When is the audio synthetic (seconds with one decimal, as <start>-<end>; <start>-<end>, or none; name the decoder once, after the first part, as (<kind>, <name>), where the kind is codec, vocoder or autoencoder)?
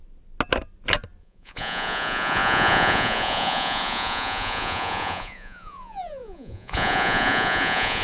1.2-8.0 (vocoder, Vocos)